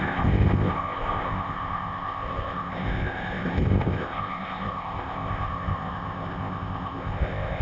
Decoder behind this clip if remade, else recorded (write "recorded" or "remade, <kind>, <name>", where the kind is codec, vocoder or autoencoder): remade, codec, ZipCodec